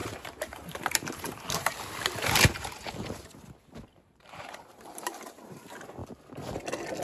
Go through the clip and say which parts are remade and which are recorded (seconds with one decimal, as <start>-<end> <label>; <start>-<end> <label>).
0.0-1.7 remade; 1.7-2.2 recorded; 2.2-2.8 remade; 2.8-3.9 recorded; 3.9-5.6 remade; 5.6-7.0 recorded